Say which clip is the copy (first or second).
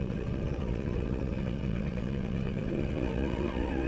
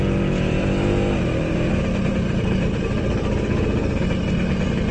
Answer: first